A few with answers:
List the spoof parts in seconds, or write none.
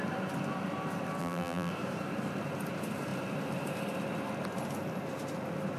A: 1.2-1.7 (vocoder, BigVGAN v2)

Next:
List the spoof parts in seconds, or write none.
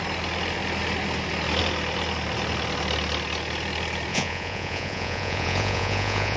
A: 4.1-6.4 (vocoder, Vocos)